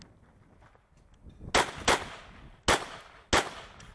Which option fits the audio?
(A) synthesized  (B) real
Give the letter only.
B